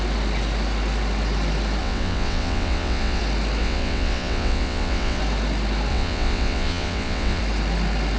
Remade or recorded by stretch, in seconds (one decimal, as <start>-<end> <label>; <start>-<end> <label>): 0.0-1.8 recorded; 1.8-3.2 remade; 3.2-3.6 recorded; 3.6-5.2 remade; 5.2-5.9 recorded; 5.9-7.4 remade; 7.4-8.2 recorded